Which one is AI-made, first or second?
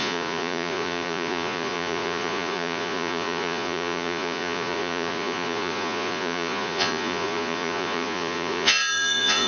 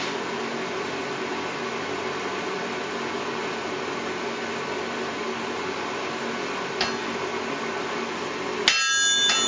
first